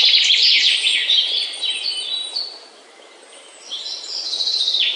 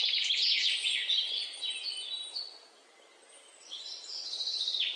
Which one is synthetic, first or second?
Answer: first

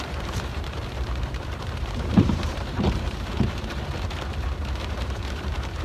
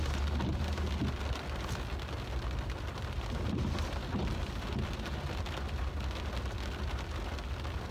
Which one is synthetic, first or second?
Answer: first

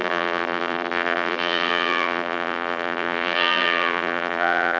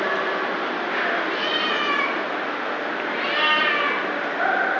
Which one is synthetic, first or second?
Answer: first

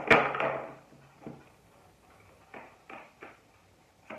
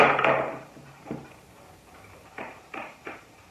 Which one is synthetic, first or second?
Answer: second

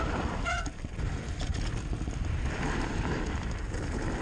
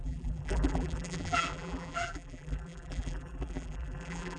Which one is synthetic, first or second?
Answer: second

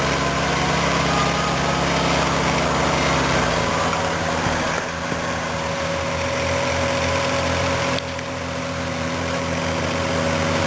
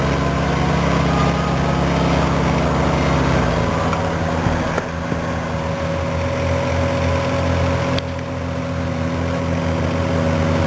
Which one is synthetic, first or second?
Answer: first